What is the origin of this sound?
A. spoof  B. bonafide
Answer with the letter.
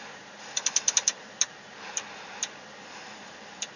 B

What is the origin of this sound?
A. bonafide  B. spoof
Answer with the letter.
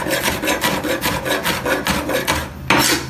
A